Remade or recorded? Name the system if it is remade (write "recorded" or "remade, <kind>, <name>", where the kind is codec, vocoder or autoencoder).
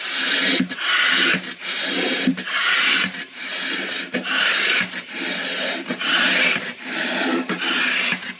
remade, vocoder, BigVGAN v2